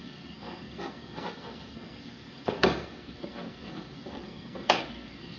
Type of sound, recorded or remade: remade